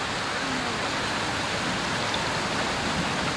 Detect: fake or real real